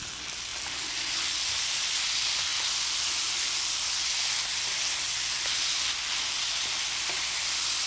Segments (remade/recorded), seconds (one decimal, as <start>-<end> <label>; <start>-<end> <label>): 0.0-7.9 recorded